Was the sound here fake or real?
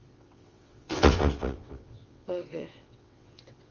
fake